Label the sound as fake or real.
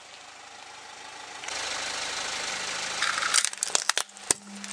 real